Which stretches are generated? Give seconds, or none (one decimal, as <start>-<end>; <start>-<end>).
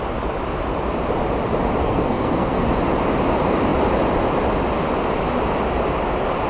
1.8-2.7